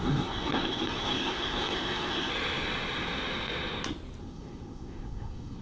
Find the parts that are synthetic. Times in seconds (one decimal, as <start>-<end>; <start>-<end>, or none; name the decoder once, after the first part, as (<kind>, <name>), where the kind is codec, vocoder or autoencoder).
0.0-2.3 (codec, SNAC); 4.2-5.6

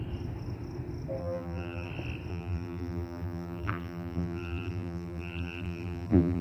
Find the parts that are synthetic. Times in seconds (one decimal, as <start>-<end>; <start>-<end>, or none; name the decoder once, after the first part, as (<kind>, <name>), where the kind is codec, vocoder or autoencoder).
1.2-1.9 (vocoder, BigVGAN v2); 2.3-6.4